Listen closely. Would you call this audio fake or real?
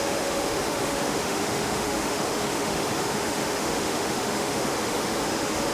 fake